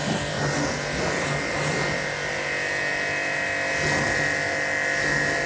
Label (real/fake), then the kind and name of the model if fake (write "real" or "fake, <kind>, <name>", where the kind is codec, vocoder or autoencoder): real